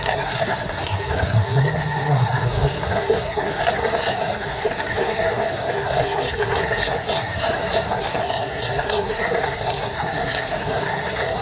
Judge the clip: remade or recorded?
remade